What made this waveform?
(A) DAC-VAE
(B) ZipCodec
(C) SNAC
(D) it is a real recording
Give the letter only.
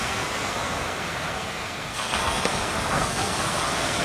C